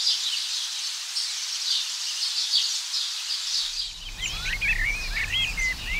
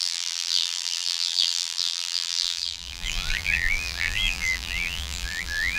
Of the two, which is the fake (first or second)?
second